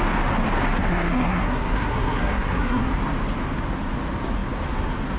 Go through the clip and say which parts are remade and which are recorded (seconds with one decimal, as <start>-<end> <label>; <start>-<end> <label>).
0.0-0.9 recorded; 0.9-2.9 remade; 2.9-5.2 recorded